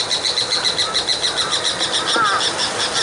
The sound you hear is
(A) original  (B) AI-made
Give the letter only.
A